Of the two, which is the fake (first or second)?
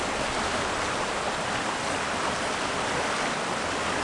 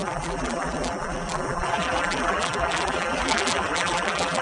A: second